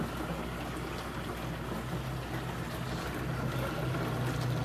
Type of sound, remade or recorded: recorded